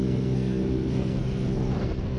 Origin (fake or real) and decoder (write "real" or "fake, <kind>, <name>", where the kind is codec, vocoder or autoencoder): fake, codec, SNAC